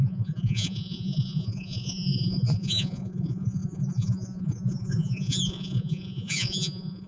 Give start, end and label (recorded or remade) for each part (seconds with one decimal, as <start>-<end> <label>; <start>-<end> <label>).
0.0-7.1 remade